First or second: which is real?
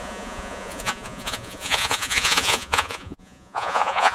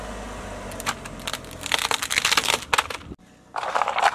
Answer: second